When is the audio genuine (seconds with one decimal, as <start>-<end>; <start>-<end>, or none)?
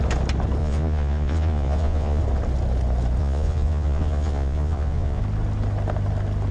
0.0-0.6; 2.2-3.2; 5.2-6.5